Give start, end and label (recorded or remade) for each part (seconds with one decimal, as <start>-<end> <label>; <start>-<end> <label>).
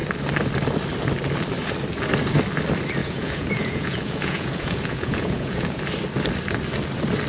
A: 0.0-3.0 recorded; 3.0-5.8 remade; 5.8-7.3 recorded